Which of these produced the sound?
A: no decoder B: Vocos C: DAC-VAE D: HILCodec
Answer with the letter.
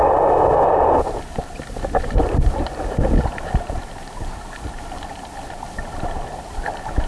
A